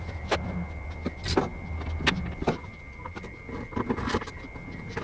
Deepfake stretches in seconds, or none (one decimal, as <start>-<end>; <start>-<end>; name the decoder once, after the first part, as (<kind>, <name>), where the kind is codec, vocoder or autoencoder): none